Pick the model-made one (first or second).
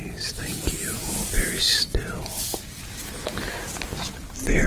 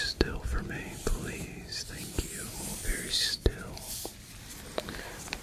second